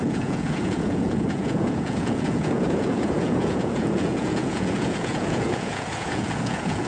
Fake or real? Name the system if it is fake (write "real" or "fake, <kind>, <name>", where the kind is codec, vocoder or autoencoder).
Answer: fake, vocoder, Vocos